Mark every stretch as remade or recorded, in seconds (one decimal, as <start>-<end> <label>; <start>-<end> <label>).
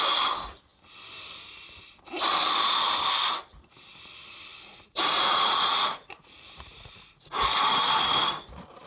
0.0-4.5 recorded; 4.5-7.9 remade; 7.9-8.9 recorded